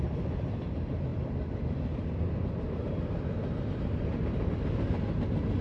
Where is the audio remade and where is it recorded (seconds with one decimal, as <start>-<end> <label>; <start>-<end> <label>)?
0.0-5.6 recorded

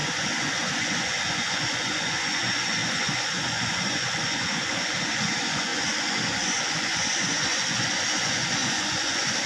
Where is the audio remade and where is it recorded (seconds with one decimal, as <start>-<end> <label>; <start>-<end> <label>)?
0.0-9.5 remade

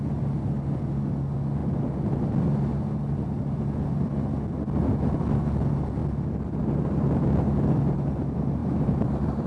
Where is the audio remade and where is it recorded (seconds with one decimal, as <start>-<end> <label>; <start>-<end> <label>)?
0.0-8.6 recorded; 8.6-9.5 remade